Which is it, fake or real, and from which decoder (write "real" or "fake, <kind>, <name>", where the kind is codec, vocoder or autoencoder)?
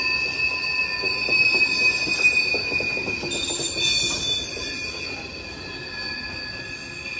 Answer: real